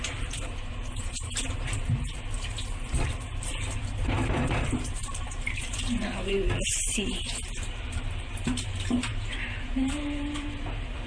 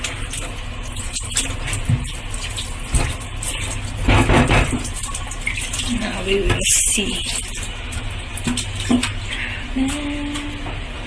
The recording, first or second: second